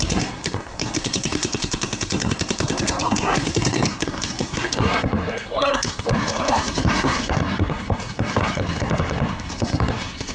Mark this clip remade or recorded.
remade